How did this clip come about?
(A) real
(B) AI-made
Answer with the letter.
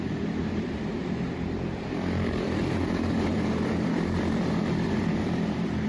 B